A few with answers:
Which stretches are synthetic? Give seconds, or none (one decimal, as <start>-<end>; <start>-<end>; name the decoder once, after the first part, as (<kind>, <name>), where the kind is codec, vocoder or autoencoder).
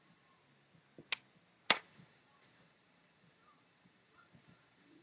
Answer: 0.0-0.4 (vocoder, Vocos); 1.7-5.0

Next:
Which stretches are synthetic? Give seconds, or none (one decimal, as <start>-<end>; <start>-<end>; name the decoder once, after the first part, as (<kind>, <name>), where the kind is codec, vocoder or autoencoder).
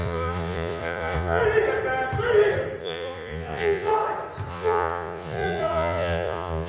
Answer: 0.0-1.4 (vocoder, Vocos); 2.8-3.9; 4.5-6.7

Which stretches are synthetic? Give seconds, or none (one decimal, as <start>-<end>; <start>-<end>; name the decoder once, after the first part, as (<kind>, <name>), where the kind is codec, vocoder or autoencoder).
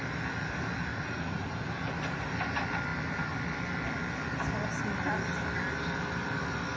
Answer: 0.9-1.5 (vocoder, Vocos)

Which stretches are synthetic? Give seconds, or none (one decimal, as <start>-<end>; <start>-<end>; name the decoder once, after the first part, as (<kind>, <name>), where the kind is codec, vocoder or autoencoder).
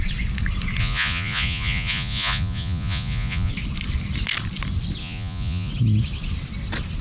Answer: 0.8-3.5 (vocoder, Vocos); 5.0-5.7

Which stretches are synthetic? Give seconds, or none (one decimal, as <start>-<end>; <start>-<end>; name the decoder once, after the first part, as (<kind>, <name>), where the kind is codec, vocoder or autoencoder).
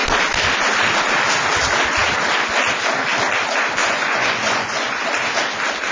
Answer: 3.8-5.0 (vocoder, Vocos)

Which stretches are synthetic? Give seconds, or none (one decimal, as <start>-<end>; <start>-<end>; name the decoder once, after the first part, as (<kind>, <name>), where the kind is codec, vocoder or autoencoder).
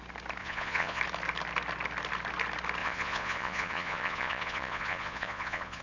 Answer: 0.4-1.0 (vocoder, Vocos); 2.8-5.8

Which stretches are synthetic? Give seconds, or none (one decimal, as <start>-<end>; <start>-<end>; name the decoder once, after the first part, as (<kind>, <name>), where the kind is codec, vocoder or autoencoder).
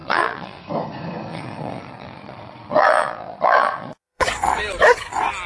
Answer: 0.0-0.6 (vocoder, Vocos); 1.3-4.6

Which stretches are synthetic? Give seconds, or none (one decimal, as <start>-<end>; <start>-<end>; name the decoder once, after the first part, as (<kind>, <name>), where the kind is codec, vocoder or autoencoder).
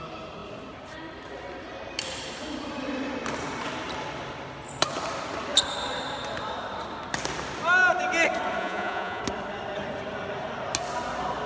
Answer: 8.6-9.2 (vocoder, Vocos)